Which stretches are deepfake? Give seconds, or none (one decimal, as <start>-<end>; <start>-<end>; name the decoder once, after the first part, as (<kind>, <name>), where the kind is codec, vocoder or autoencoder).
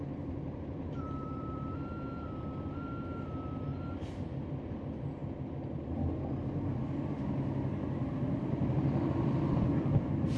0.0-5.2 (vocoder, BigVGAN v2); 8.7-10.4